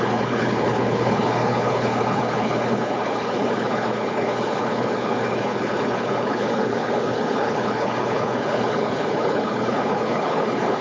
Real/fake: fake